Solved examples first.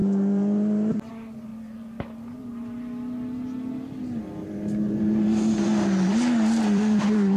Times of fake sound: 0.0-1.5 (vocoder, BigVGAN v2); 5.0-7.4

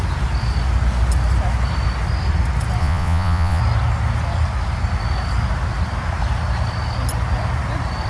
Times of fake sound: 2.8-3.6 (vocoder, Vocos)

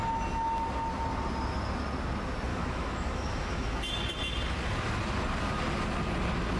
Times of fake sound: 2.5-3.8 (autoencoder, DAC-VAE)

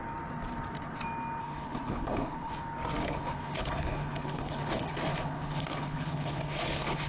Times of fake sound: 1.4-2.6 (codec, HILCodec); 3.0-7.1

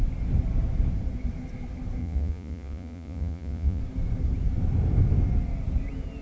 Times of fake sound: 2.0-3.8 (vocoder, Vocos)

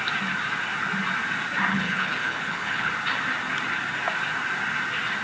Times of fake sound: 1.7-2.9 (codec, HILCodec)

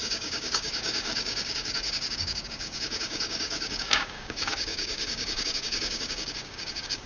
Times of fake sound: 0.0-7.1 (codec, DAC)

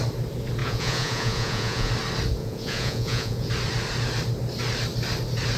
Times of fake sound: 0.6-1.9 (vocoder, Vocos); 2.4-3.5